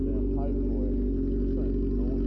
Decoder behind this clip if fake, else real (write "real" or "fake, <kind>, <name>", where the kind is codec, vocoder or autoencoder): real